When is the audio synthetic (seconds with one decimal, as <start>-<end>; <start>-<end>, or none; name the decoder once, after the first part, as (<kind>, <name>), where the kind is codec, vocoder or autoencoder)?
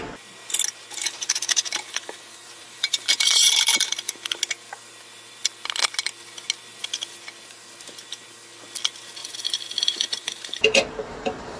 1.0-4.1 (vocoder, BigVGAN v2); 9.2-11.6